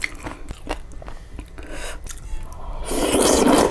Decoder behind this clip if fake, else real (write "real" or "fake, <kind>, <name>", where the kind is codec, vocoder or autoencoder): real